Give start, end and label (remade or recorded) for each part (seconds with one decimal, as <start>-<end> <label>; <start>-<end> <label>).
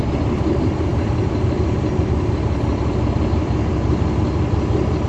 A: 0.0-5.1 recorded